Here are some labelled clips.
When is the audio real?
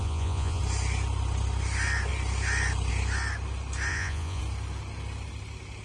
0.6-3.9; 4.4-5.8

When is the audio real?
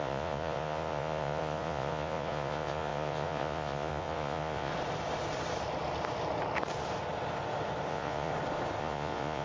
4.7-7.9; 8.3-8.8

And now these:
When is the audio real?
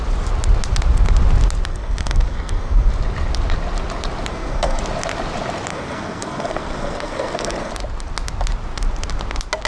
0.0-1.7; 2.9-4.3; 4.8-5.7; 7.7-9.7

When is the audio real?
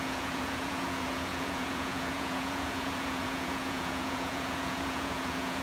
none